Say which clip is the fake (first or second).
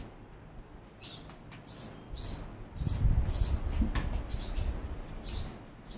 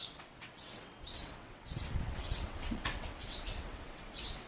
second